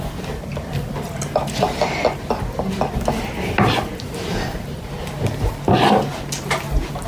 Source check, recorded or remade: recorded